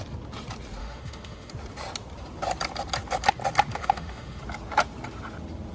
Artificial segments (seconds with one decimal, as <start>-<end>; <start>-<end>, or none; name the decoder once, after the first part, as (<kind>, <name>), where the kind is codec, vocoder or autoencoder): 0.8-1.5 (autoencoder, DAC-VAE); 3.7-4.4